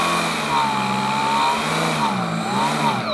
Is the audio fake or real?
real